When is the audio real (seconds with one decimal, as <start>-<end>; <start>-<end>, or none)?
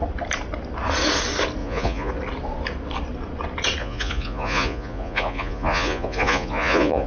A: 0.0-1.6; 2.1-3.8